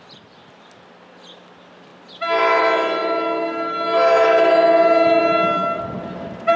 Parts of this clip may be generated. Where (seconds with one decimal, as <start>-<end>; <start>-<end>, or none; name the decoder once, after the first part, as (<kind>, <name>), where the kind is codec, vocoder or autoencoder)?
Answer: none